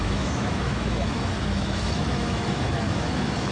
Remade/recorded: remade